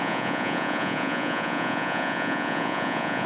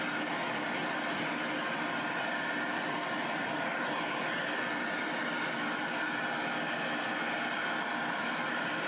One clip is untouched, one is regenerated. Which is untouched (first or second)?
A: second